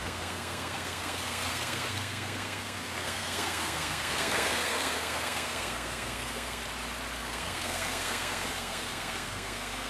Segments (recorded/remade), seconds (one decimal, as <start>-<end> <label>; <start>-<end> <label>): 0.0-6.6 remade; 6.6-7.2 recorded; 7.2-9.9 remade